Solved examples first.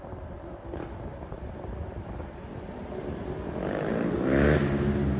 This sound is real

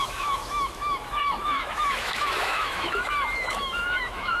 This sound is fake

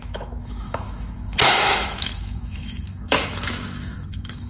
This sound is fake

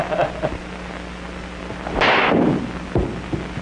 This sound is real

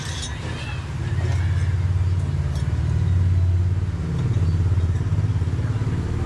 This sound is real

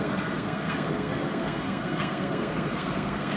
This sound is fake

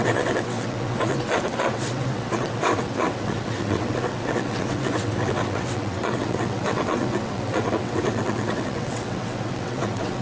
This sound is fake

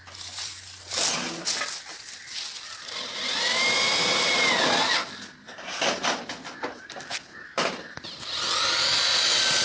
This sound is real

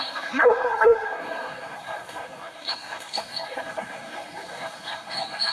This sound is fake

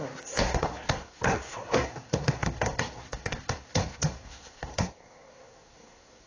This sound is fake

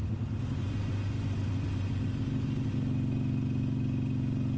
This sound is real